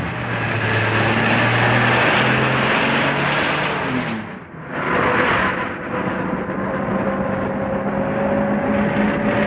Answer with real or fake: real